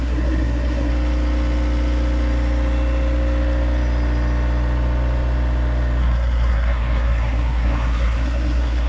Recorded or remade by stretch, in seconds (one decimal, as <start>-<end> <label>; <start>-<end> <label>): 0.0-0.9 remade; 0.9-6.0 recorded; 6.0-8.9 remade